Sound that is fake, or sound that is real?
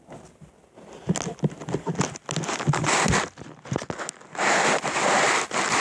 real